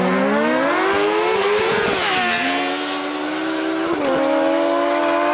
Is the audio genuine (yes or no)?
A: yes